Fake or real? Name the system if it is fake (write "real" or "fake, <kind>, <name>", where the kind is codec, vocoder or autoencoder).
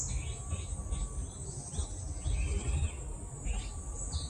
real